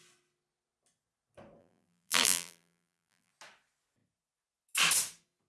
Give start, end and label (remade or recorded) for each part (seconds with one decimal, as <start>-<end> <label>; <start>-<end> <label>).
0.0-1.6 recorded; 1.6-3.3 remade; 3.3-5.5 recorded